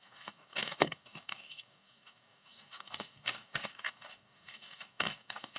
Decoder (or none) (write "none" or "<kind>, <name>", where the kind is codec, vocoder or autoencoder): codec, DAC